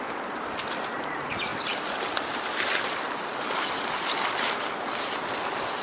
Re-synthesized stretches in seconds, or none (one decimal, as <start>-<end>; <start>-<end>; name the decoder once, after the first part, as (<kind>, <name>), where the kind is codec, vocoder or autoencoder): 1.5-5.0 (vocoder, BigVGAN v2)